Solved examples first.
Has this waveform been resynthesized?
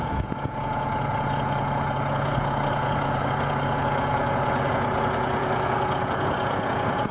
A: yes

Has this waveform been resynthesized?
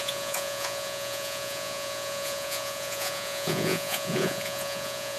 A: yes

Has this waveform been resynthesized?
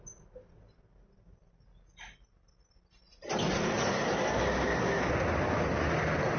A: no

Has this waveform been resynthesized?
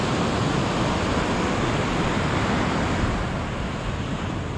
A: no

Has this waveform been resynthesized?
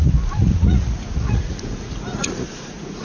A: yes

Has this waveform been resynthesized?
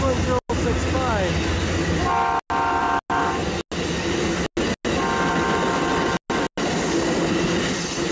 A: no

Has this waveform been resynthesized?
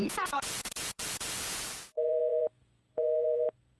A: yes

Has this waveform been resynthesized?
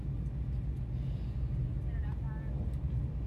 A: no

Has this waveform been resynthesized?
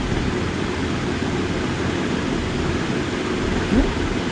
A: no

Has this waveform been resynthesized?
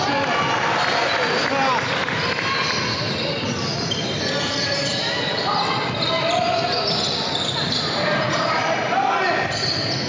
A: no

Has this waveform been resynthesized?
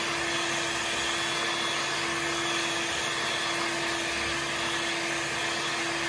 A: no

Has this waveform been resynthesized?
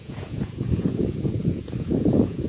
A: yes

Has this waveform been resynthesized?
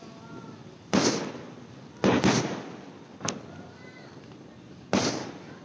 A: no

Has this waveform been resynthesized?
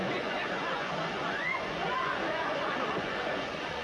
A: yes